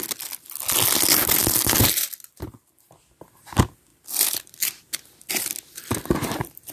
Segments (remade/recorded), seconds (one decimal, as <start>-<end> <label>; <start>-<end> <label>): 0.0-1.8 recorded; 1.8-2.7 remade; 2.7-3.9 recorded; 3.9-5.3 remade; 5.3-6.7 recorded